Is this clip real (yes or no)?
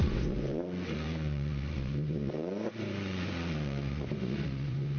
no